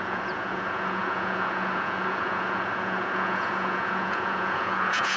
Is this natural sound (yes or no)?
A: no